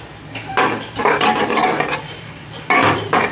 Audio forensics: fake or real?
real